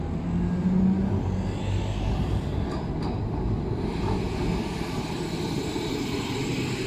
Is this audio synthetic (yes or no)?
no